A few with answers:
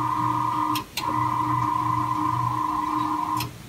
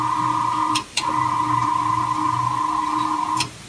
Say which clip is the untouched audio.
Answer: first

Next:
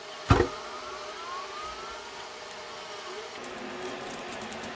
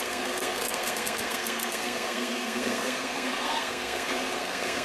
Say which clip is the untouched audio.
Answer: first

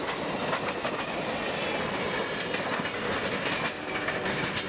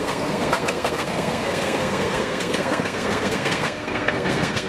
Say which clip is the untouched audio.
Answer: first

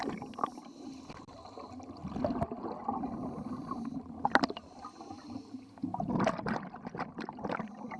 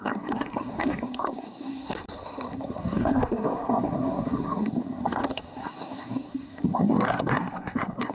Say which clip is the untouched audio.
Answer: first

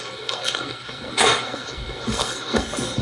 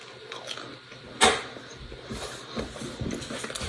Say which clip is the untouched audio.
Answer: second